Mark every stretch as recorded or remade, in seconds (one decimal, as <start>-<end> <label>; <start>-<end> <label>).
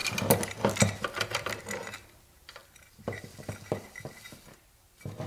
0.0-5.3 recorded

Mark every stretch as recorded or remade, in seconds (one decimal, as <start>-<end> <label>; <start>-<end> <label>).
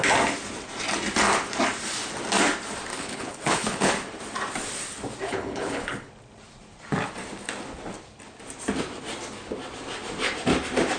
0.0-2.9 recorded; 2.9-3.9 remade; 3.9-5.3 recorded; 5.3-6.1 remade; 6.1-11.0 recorded